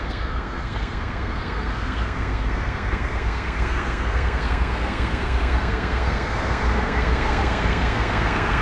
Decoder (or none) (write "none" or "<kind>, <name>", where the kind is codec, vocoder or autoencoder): codec, SNAC